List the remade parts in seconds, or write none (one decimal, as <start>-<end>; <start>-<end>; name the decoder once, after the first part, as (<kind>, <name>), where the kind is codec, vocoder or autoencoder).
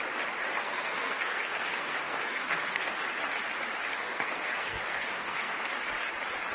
0.5-3.0 (codec, SNAC); 3.9-5.7